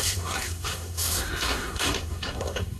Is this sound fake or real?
fake